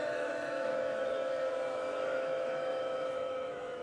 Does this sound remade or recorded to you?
remade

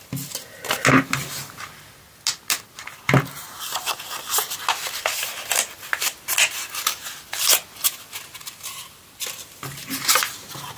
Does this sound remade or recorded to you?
recorded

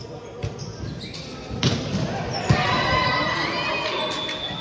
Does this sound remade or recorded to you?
recorded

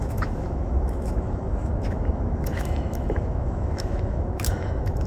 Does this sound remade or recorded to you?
remade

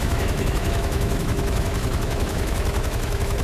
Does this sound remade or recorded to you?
remade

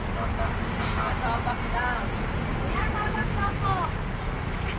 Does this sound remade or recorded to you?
recorded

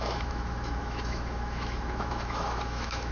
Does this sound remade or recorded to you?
remade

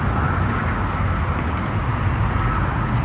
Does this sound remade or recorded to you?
recorded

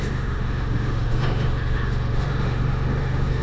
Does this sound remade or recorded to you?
remade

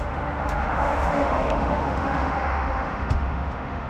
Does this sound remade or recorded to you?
remade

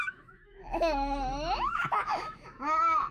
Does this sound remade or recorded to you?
remade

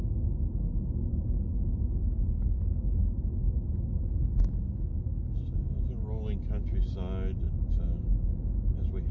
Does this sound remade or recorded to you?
recorded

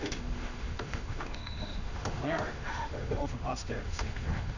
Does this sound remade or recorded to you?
remade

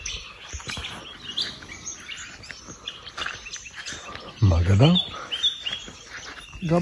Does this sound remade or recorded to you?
recorded